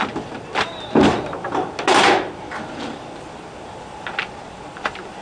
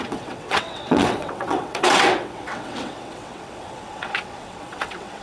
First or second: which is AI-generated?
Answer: second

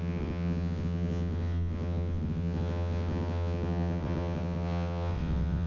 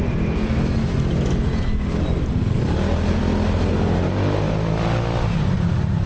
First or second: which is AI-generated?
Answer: first